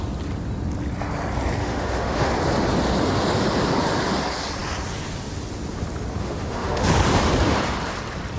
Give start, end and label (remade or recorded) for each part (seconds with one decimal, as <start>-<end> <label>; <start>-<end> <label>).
0.0-1.6 recorded; 1.6-2.3 remade; 2.3-6.2 recorded; 6.2-6.9 remade; 6.9-8.4 recorded